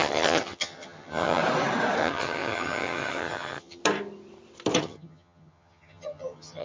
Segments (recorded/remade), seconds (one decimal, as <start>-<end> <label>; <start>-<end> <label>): 0.0-1.4 remade; 1.4-2.0 recorded; 2.0-3.8 remade; 3.8-4.8 recorded; 4.8-6.6 remade